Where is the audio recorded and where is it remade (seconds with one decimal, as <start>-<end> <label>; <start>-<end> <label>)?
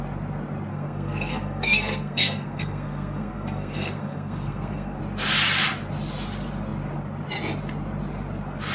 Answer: 0.0-0.7 recorded; 0.7-5.0 remade; 5.0-8.7 recorded